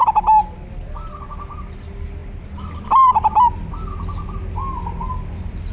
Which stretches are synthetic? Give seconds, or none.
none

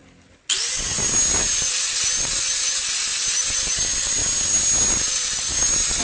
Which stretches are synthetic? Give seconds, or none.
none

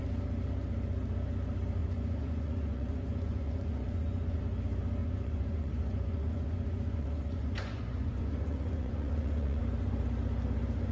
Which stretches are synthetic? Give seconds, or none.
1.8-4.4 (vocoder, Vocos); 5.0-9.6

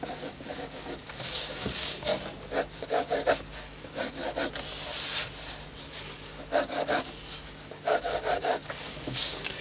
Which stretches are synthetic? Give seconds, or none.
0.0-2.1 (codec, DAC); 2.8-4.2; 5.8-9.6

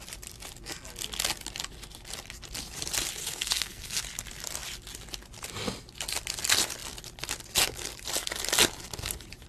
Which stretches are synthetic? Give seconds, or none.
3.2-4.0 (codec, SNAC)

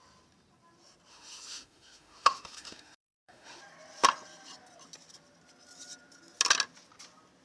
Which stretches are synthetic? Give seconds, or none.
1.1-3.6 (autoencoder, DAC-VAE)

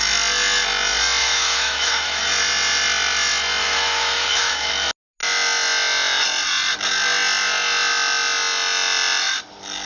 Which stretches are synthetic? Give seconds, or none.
1.2-2.2 (autoencoder, DAC-VAE); 3.6-4.7

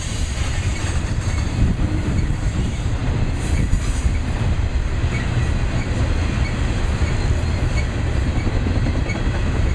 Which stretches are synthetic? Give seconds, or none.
0.0-4.7 (vocoder, BigVGAN v2)